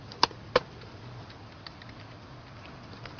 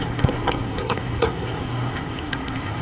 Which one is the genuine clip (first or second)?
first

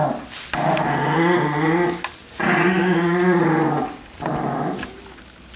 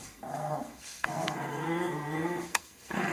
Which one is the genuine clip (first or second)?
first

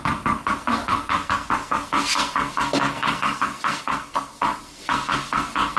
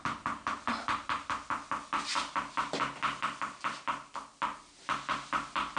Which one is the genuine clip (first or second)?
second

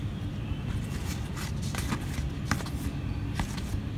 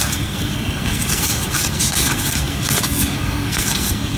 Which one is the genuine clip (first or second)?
first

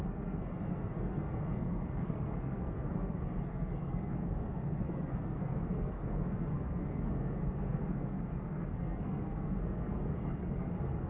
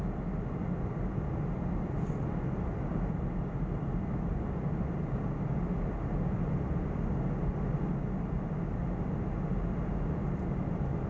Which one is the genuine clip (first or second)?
second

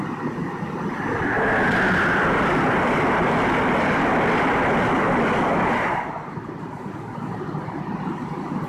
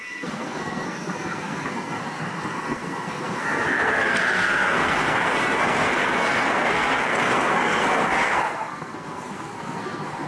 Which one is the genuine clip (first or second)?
first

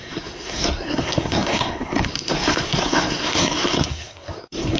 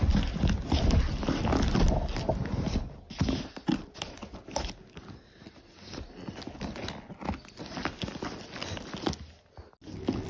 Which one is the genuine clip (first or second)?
second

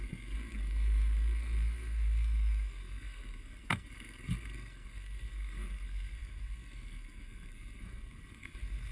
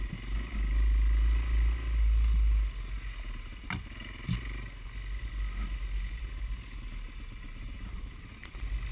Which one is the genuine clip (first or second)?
second